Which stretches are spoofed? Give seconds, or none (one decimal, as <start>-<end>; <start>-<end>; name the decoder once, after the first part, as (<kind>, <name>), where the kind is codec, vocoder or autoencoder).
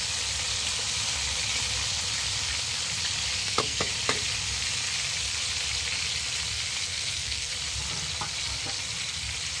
3.4-3.9 (codec, SNAC); 6.9-7.5